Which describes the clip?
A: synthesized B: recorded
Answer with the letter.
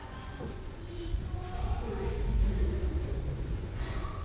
A